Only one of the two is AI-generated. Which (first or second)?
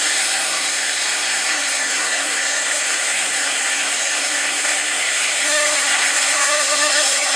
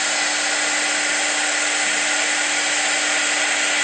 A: first